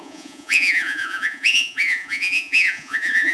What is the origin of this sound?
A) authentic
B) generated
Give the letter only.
B